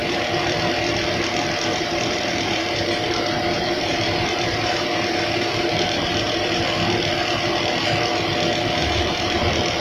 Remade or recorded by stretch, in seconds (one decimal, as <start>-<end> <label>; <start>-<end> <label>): 0.0-1.7 recorded; 1.7-6.6 remade; 6.6-8.8 recorded; 8.8-9.4 remade; 9.4-9.8 recorded